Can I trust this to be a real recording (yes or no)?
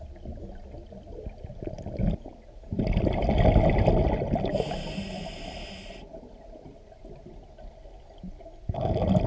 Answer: yes